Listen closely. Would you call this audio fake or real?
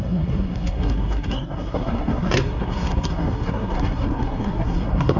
fake